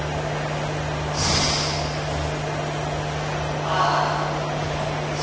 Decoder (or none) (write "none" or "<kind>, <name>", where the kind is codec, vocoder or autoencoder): none